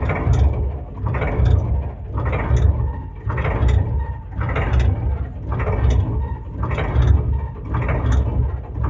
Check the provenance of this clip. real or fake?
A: real